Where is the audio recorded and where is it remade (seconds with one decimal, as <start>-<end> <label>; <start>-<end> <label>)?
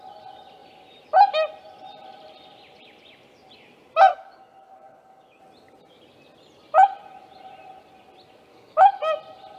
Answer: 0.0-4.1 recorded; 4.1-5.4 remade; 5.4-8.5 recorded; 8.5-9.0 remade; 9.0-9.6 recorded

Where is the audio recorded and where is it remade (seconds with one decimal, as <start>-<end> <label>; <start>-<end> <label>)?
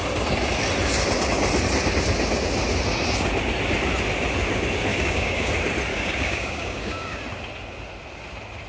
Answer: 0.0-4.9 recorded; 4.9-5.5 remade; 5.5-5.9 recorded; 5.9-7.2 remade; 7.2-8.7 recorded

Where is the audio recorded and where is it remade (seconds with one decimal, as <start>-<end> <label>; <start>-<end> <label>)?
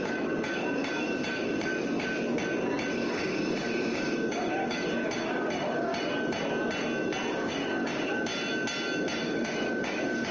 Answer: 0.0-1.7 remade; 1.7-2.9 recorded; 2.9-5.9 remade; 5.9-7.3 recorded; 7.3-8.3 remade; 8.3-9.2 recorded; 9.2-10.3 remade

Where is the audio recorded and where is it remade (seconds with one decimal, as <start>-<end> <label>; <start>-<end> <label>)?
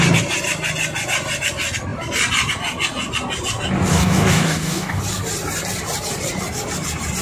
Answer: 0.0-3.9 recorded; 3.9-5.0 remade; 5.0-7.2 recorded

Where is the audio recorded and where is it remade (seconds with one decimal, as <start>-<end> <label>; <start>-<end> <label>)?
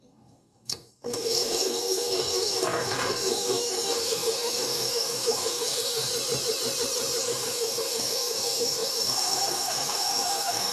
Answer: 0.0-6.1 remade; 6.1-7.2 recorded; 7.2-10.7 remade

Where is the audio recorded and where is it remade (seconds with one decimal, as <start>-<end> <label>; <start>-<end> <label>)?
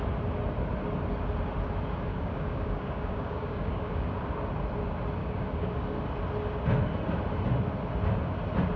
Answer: 0.0-2.1 recorded; 2.1-4.1 remade; 4.1-5.2 recorded; 5.2-5.7 remade; 5.7-8.8 recorded